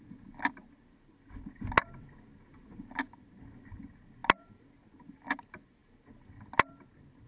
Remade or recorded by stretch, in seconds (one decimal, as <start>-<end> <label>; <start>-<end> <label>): 0.0-7.3 recorded